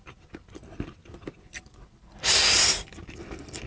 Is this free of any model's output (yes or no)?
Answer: yes